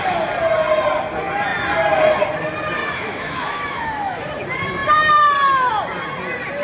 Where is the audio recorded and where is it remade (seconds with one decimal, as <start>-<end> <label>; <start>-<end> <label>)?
0.0-2.8 recorded; 2.8-4.2 remade; 4.2-6.6 recorded